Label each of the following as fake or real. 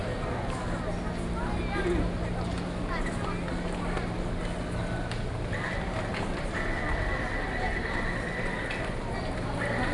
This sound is real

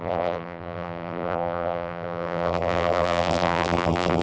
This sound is fake